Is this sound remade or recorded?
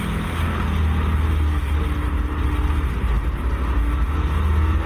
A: recorded